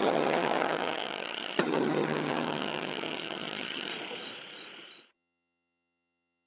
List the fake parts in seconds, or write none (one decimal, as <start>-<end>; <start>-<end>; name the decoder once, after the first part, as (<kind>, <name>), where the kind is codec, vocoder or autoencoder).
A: 0.0-3.9 (vocoder, HiFi-GAN); 5.1-6.5